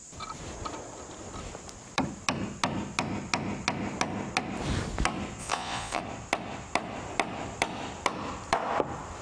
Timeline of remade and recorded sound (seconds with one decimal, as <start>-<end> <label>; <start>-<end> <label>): 0.0-5.4 recorded; 5.4-6.0 remade; 6.0-9.2 recorded